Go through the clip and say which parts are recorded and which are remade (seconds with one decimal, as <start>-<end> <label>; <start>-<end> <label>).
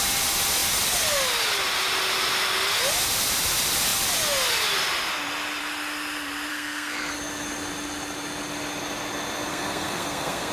0.0-6.5 recorded; 6.5-7.1 remade; 7.1-9.5 recorded; 9.5-10.5 remade